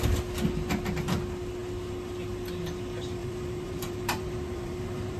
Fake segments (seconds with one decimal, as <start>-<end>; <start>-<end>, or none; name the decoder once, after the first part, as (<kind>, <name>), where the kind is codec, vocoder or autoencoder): 3.2-5.2 (vocoder, BigVGAN v2)